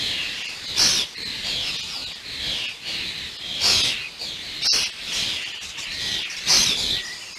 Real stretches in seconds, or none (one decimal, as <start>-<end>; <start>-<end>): 0.0-5.9; 6.5-7.4